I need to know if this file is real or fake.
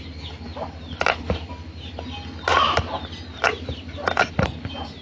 real